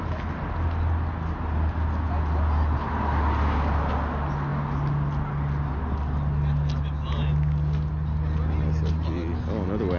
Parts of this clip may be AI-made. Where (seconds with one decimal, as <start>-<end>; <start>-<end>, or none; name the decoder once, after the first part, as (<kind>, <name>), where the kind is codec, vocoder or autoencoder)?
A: none